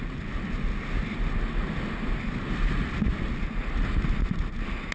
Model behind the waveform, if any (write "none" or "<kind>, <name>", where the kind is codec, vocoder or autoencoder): none